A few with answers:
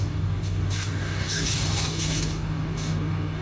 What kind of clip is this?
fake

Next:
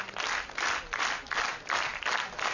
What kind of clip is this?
real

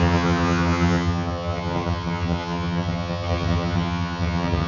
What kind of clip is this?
fake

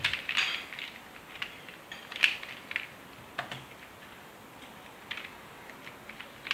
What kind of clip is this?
real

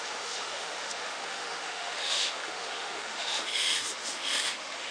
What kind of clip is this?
fake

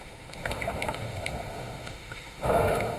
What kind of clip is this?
fake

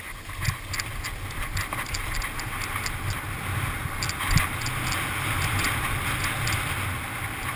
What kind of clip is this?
real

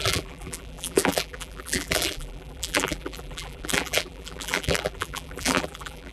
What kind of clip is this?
fake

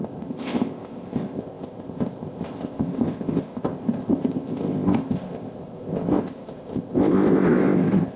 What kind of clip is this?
fake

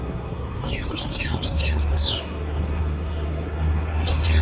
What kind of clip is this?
fake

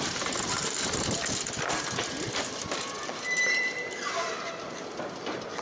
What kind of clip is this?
fake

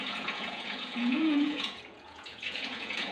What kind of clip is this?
fake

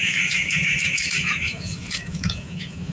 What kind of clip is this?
fake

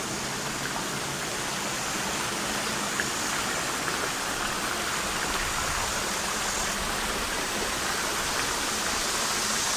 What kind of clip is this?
real